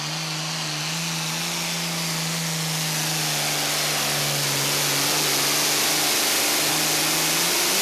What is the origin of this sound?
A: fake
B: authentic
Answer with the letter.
B